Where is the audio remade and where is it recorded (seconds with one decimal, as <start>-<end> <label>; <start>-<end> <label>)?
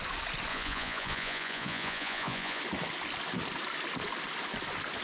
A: 0.0-0.5 recorded; 0.5-2.6 remade; 2.6-5.0 recorded